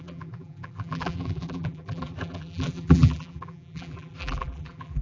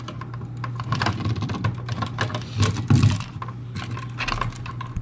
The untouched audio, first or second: second